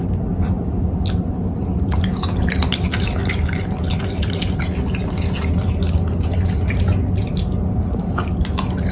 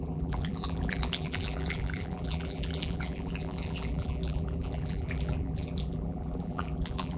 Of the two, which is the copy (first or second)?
second